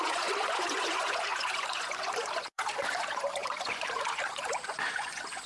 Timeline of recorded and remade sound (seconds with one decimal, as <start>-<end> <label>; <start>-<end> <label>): 0.0-5.5 remade